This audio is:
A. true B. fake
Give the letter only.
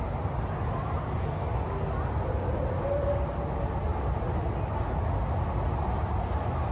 A